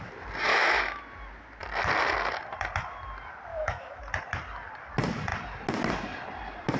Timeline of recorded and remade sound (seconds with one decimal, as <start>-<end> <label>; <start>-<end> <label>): 0.0-0.5 recorded; 0.5-1.0 remade; 1.0-3.5 recorded; 3.5-4.0 remade; 4.0-6.8 recorded